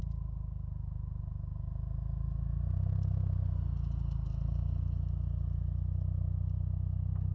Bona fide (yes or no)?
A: yes